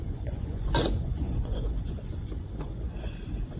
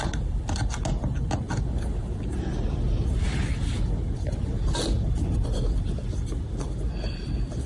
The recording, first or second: second